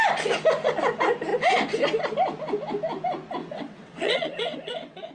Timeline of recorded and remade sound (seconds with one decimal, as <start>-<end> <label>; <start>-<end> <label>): 0.0-3.4 recorded; 3.4-5.1 remade

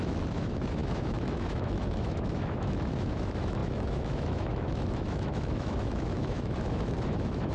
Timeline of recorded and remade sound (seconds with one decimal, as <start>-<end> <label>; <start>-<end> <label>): 0.0-7.5 remade

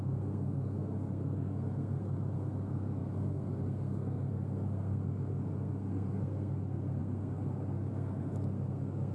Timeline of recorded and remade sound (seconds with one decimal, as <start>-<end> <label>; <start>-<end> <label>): 0.0-9.1 remade

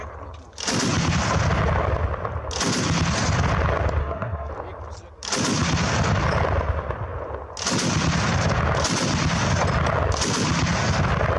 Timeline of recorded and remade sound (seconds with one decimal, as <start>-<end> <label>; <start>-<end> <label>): 0.0-4.0 recorded; 4.0-4.5 remade; 4.5-11.4 recorded

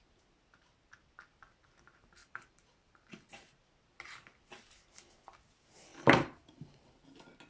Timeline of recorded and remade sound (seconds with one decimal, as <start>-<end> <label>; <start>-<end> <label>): 0.0-2.2 recorded; 2.2-3.6 remade; 3.6-5.9 recorded; 5.9-6.9 remade; 6.9-7.5 recorded

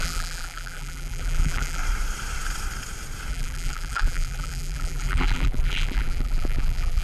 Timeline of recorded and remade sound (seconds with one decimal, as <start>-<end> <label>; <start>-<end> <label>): 0.0-1.8 remade; 1.8-3.3 recorded; 3.3-7.0 remade

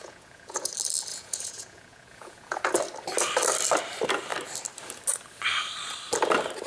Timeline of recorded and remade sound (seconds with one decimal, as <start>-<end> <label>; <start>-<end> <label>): 0.0-0.7 remade; 0.7-1.1 recorded; 1.1-2.7 remade; 2.7-6.7 recorded

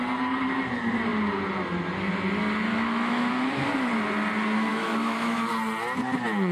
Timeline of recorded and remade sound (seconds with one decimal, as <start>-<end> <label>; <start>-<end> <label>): 0.0-2.7 recorded; 2.7-3.3 remade; 3.3-4.7 recorded; 4.7-5.5 remade; 5.5-6.5 recorded